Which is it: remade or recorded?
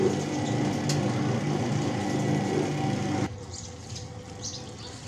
recorded